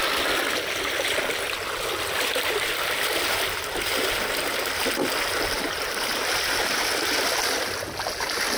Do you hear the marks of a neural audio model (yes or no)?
no